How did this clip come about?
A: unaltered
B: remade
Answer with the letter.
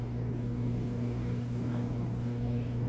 B